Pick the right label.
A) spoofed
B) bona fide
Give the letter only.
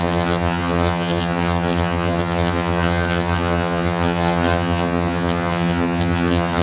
A